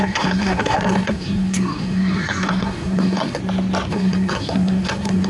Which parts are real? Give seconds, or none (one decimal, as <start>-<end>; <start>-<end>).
3.4-3.9